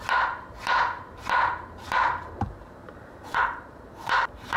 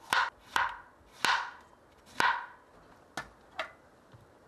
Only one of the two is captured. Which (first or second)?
second